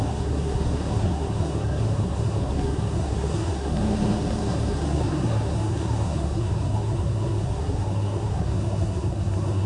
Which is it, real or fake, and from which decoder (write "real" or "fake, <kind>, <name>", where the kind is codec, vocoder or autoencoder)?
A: fake, codec, SNAC